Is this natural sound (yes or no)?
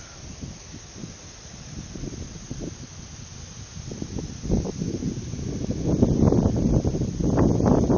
yes